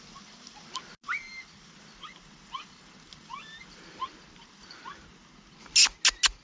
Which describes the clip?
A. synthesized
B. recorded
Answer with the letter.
B